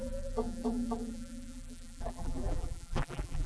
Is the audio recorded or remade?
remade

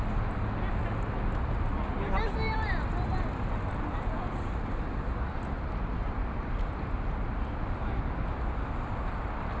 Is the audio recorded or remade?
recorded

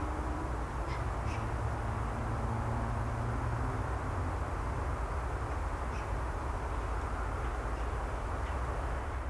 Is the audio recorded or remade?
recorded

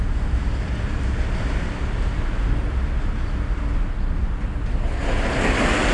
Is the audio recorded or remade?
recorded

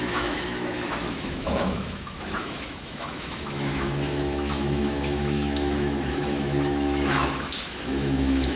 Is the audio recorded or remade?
remade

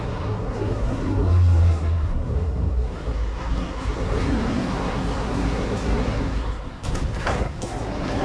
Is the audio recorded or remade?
remade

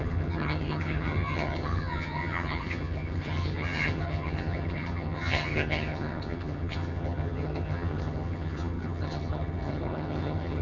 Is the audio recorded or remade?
remade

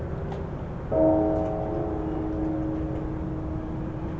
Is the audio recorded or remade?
recorded